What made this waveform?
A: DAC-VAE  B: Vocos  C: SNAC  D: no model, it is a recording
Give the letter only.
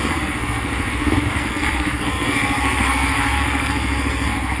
C